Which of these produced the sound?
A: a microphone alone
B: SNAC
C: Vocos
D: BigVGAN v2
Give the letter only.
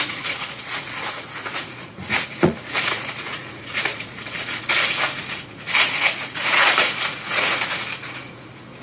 C